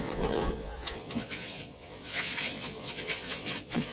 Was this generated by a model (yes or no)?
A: yes